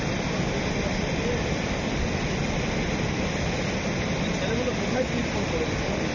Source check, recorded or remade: recorded